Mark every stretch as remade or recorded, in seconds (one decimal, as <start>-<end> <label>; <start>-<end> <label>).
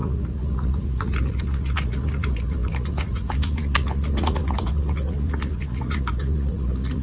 0.0-7.0 remade